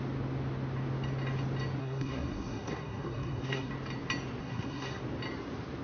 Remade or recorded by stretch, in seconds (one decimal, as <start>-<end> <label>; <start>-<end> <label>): 0.0-1.8 recorded; 1.8-3.7 remade; 3.7-4.4 recorded; 4.4-5.0 remade; 5.0-5.8 recorded